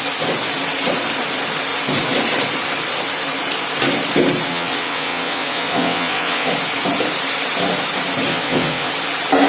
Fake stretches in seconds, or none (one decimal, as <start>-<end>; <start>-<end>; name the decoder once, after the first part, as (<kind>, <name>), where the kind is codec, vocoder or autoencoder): 4.5-6.5 (vocoder, WaveNeXt); 8.3-8.9